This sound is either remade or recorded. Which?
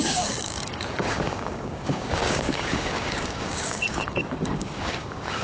remade